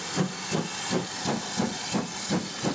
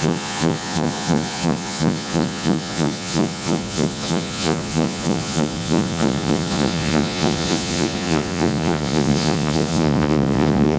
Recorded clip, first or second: first